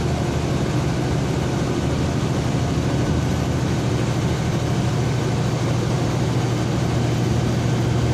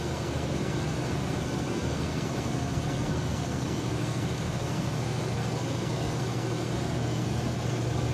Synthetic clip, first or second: second